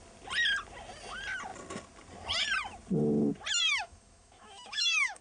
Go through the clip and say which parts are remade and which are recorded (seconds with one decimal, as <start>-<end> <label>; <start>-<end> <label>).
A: 0.0-3.6 recorded; 3.6-5.2 remade